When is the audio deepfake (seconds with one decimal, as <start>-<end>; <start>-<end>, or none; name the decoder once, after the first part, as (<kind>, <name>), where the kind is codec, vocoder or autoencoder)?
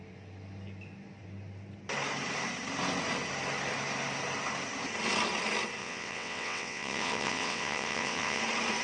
5.8-8.4 (vocoder, WaveNeXt)